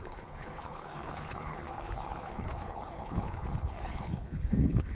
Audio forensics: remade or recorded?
remade